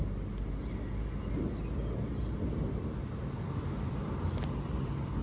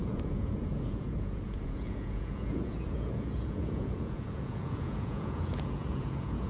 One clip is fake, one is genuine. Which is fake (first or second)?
second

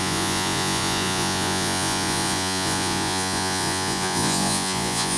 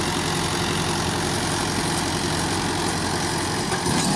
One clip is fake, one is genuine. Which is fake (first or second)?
first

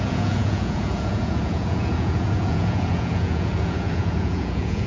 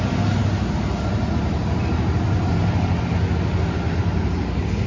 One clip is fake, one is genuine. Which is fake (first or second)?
first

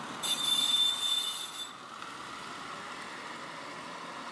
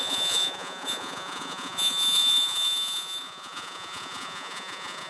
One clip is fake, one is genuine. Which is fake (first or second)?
second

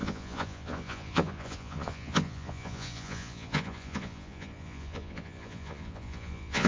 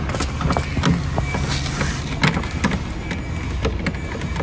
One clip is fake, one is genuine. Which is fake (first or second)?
first